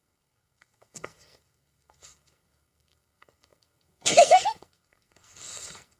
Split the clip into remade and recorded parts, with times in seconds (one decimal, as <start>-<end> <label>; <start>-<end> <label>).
0.0-6.0 remade